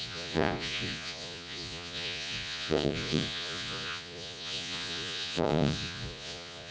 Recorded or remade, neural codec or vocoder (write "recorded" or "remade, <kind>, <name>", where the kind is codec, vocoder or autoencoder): remade, vocoder, Vocos